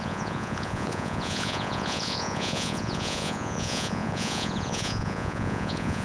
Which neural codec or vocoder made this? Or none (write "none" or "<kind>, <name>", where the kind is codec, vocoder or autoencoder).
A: vocoder, Vocos